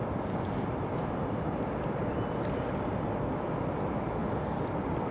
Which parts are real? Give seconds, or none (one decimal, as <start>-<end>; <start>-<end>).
0.0-5.1